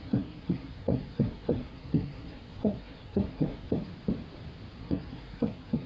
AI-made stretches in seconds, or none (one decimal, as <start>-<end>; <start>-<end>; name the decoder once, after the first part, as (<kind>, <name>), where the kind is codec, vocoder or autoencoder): 0.0-3.9 (codec, SNAC); 4.8-5.9